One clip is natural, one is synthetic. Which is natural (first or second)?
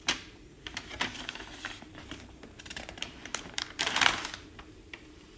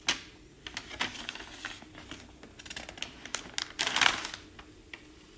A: second